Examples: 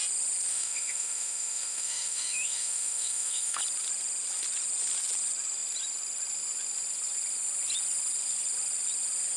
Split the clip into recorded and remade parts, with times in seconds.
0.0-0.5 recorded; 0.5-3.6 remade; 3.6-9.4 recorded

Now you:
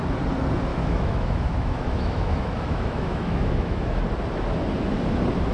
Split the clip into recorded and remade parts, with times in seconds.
0.0-0.7 recorded; 0.7-4.0 remade; 4.0-5.5 recorded

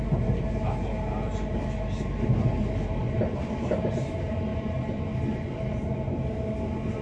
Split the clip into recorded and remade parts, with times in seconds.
0.0-7.0 recorded

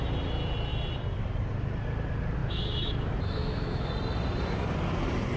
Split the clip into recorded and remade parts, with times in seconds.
0.0-2.4 recorded; 2.4-3.9 remade; 3.9-5.4 recorded

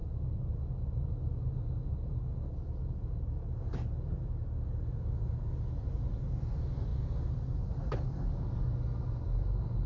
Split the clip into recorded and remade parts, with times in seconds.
0.0-9.9 recorded

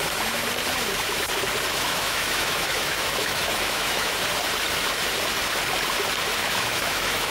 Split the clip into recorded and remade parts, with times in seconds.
0.0-1.7 recorded; 1.7-4.1 remade; 4.1-6.4 recorded; 6.4-7.3 remade

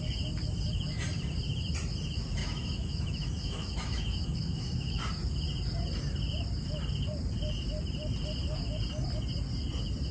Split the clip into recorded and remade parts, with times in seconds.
0.0-2.4 recorded; 2.4-5.0 remade; 5.0-10.1 recorded